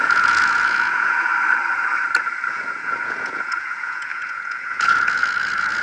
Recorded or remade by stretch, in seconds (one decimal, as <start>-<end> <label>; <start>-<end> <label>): 0.0-1.3 remade; 1.3-2.5 recorded; 2.5-5.8 remade